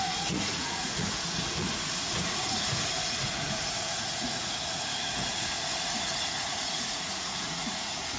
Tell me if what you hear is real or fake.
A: fake